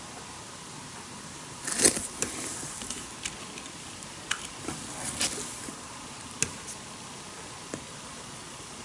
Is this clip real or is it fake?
real